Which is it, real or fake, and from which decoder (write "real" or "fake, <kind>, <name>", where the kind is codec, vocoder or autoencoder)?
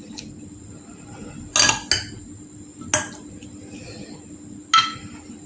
real